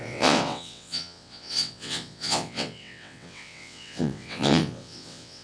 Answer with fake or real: fake